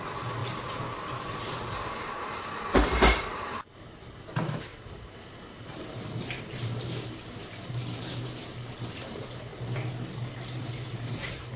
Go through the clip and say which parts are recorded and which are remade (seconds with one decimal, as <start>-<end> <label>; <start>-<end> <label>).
0.0-9.5 remade; 9.5-10.9 recorded; 10.9-11.6 remade